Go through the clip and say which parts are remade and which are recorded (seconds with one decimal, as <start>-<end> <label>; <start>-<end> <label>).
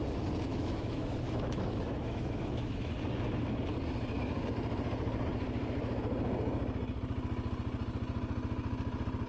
0.0-0.5 recorded; 0.5-2.9 remade; 2.9-9.3 recorded